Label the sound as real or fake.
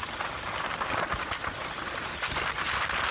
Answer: real